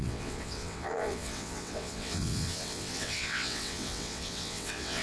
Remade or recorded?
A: remade